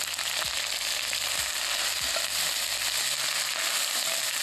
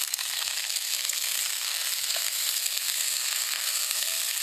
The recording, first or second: first